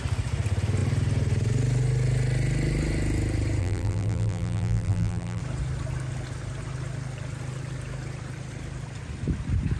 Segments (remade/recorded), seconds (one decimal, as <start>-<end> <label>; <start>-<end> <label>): 0.0-3.6 recorded; 3.6-5.4 remade; 5.4-9.8 recorded